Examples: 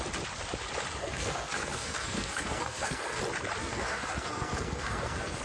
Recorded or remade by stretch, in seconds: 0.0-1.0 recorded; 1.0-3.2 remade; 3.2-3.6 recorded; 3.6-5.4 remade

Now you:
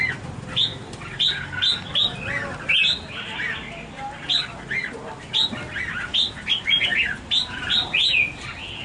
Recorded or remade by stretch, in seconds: 0.0-6.1 recorded; 6.1-7.7 remade; 7.7-8.8 recorded

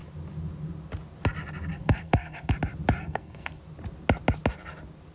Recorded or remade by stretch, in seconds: 0.0-1.7 recorded; 1.7-2.5 remade; 2.5-3.0 recorded; 3.0-3.6 remade; 3.6-5.1 recorded